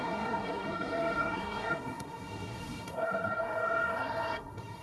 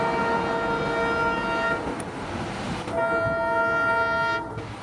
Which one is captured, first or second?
second